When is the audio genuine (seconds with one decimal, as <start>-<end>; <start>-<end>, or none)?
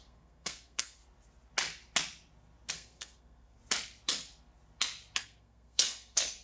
1.0-2.7; 3.6-5.2